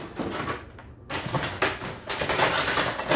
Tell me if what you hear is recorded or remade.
recorded